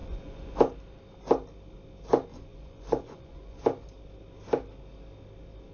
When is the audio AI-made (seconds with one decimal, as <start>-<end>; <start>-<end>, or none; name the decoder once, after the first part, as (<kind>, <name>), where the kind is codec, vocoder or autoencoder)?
0.0-0.6 (vocoder, Vocos); 2.3-3.6